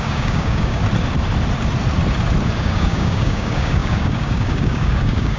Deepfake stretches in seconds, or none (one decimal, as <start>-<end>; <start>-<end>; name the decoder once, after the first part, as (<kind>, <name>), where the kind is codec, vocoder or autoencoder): 0.0-0.8 (codec, DAC); 2.6-5.4